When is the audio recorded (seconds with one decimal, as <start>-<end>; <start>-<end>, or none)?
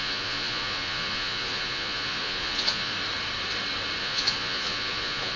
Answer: 2.9-4.0